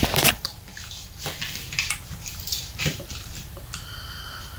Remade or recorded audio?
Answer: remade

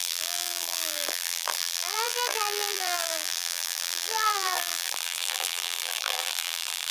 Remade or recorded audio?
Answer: remade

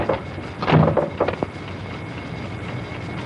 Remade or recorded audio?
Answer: recorded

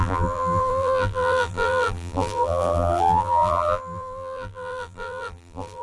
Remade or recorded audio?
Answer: remade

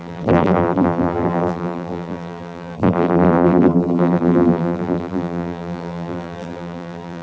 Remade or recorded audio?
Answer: remade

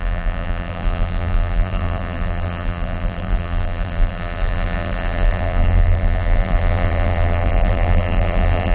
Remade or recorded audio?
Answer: remade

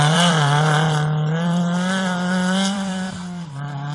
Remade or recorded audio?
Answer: remade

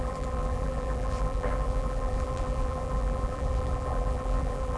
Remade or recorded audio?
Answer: remade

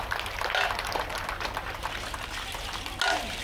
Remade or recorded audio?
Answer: recorded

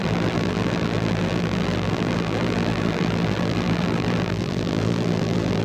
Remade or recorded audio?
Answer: remade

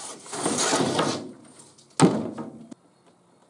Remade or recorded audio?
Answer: recorded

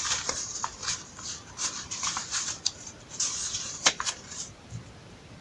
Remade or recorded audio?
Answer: remade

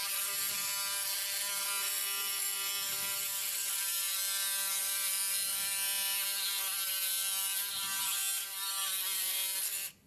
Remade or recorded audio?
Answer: recorded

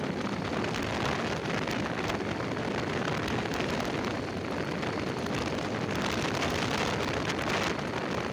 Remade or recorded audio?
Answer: remade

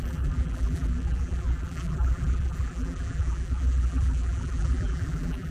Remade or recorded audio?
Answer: remade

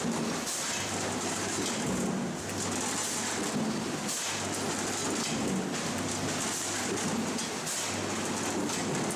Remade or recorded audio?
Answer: recorded